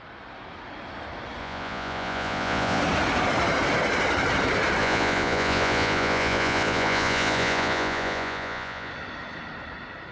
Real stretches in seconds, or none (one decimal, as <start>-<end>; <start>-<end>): 0.0-1.4; 2.8-4.8; 8.9-10.1